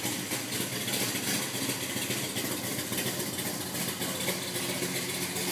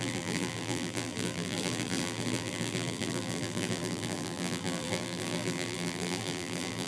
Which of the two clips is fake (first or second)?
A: second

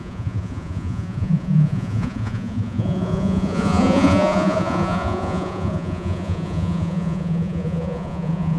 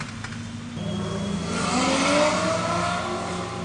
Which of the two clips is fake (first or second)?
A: first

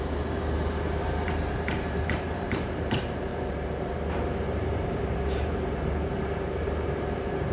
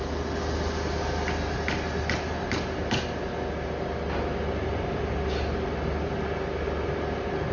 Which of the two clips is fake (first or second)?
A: first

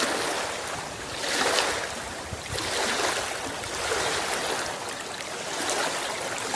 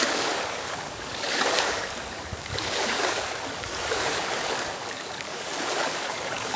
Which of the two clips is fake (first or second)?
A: second